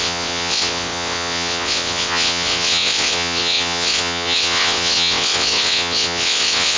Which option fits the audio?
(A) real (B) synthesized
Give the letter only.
B